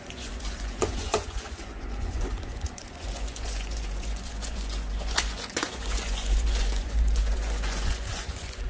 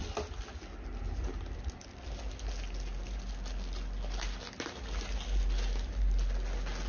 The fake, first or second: first